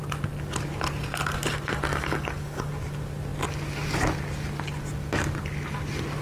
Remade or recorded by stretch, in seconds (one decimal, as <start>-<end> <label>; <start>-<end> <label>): 0.0-1.9 recorded; 1.9-2.7 remade; 2.7-6.2 recorded